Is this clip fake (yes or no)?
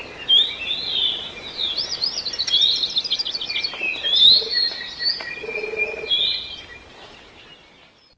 no